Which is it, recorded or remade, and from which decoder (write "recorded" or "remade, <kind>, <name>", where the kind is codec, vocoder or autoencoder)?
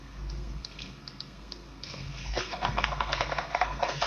remade, codec, SNAC